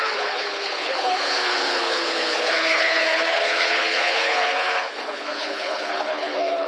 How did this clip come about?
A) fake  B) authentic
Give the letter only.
A